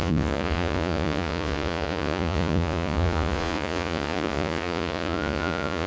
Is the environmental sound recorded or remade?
remade